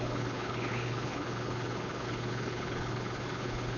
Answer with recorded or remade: remade